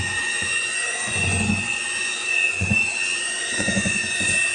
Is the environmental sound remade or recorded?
remade